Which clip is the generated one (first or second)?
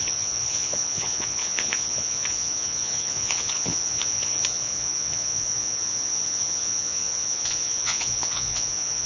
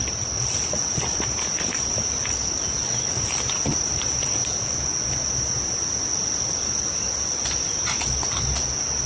first